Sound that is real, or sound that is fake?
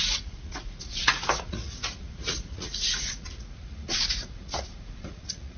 fake